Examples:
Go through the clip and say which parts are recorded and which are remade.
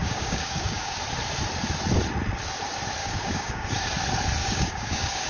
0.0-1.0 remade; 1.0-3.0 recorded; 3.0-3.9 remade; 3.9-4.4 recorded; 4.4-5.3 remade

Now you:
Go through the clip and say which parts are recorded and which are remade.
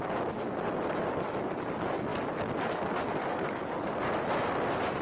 0.0-3.2 recorded; 3.2-4.0 remade; 4.0-5.0 recorded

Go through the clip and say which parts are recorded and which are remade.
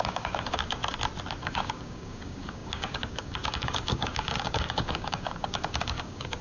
0.0-0.8 remade; 0.8-1.4 recorded; 1.4-6.4 remade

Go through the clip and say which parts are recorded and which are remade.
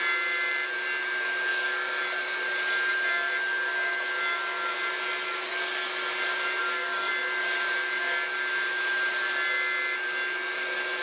0.0-1.5 recorded; 1.5-2.0 remade; 2.0-6.6 recorded; 6.6-7.1 remade; 7.1-11.0 recorded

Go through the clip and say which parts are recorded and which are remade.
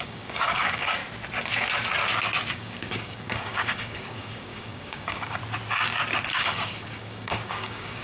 0.0-1.0 remade; 1.0-2.5 recorded; 2.5-5.4 remade; 5.4-6.3 recorded; 6.3-8.0 remade